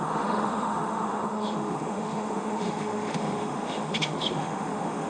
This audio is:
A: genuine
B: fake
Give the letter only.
B